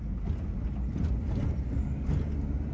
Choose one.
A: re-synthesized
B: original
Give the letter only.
B